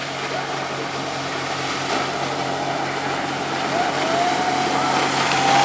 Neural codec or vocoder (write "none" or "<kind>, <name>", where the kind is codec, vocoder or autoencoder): none